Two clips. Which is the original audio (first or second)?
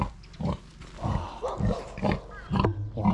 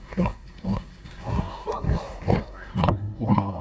first